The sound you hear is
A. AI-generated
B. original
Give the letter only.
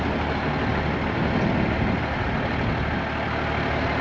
B